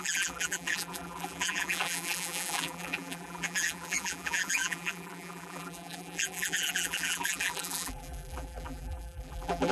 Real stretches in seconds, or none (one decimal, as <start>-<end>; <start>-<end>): none